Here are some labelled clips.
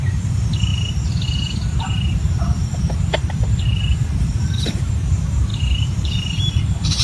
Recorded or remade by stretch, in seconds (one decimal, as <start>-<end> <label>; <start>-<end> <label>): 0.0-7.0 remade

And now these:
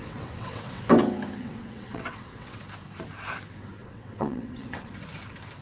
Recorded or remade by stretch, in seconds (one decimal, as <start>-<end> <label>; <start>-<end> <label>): 0.0-0.9 remade; 0.9-1.4 recorded; 1.4-2.6 remade; 2.6-3.8 recorded; 3.8-4.9 remade; 4.9-5.6 recorded

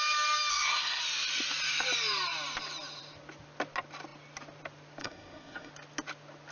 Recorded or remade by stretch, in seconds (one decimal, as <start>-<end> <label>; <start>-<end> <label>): 0.0-0.5 recorded; 0.5-1.0 remade; 1.0-5.0 recorded; 5.0-5.7 remade; 5.7-6.5 recorded

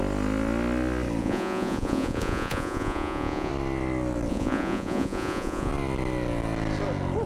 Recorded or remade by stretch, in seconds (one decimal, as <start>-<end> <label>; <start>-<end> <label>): 0.0-1.2 recorded; 1.2-3.5 remade; 3.5-4.3 recorded; 4.3-5.7 remade; 5.7-7.3 recorded

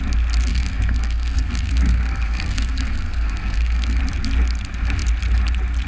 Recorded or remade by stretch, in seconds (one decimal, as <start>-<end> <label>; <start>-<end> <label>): 0.0-0.5 recorded; 0.5-4.0 remade; 4.0-5.9 recorded

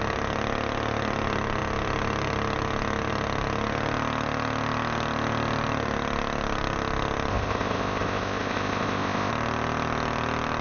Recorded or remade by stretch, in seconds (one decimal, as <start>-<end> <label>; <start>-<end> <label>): 0.0-7.3 recorded; 7.3-9.3 remade; 9.3-10.6 recorded

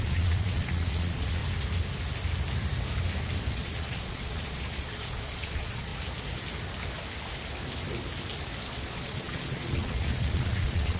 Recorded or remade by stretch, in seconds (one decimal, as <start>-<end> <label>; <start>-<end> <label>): 0.0-1.4 remade; 1.4-3.5 recorded; 3.5-5.9 remade; 5.9-8.6 recorded; 8.6-11.0 remade